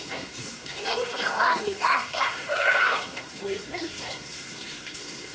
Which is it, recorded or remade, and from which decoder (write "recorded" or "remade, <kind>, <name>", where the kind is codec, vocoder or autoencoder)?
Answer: remade, codec, SNAC